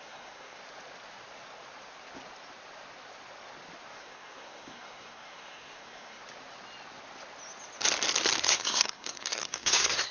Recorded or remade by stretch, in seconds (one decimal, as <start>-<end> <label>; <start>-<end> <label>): 0.0-0.6 remade; 0.6-3.9 recorded; 3.9-6.2 remade; 6.2-8.4 recorded; 8.4-10.1 remade